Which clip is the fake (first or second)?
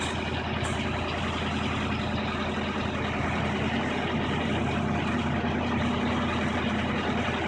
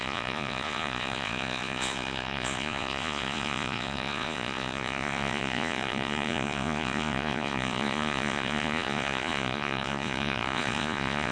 second